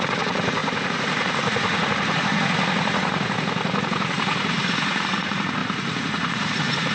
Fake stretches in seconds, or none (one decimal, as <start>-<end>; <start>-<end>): 0.0-6.9